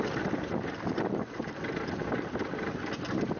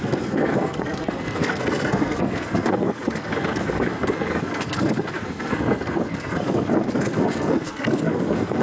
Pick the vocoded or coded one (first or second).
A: second